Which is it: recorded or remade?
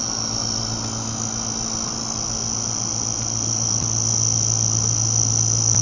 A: recorded